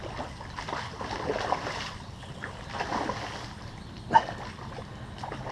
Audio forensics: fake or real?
real